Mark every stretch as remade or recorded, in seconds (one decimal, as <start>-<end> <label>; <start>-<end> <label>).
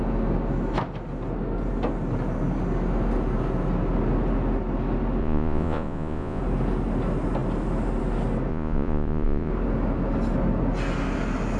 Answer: 0.0-5.2 recorded; 5.2-6.4 remade; 6.4-8.5 recorded; 8.5-9.5 remade; 9.5-11.6 recorded